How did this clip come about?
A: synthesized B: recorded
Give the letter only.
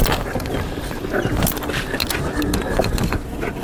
B